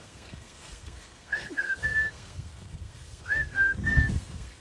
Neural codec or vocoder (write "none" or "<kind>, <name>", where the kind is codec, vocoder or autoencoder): codec, SNAC